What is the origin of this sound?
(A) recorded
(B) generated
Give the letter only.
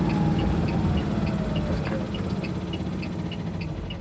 A